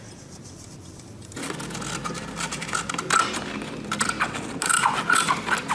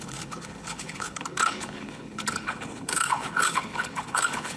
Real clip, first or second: first